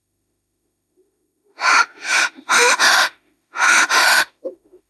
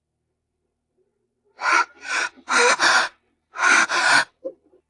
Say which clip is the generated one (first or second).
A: first